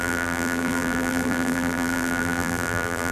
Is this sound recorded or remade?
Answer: remade